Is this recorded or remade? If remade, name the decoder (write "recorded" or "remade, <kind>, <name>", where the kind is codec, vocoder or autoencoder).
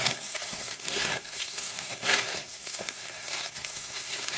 remade, codec, SNAC